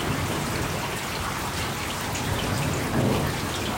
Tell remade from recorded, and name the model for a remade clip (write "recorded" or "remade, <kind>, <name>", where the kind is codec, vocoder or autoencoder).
recorded